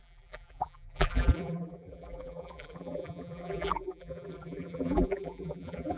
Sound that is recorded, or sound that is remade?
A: remade